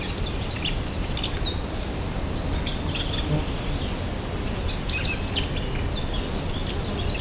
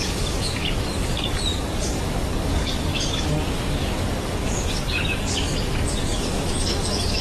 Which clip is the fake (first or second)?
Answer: second